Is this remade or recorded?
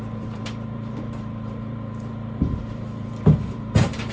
remade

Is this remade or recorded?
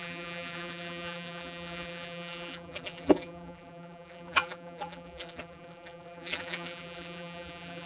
remade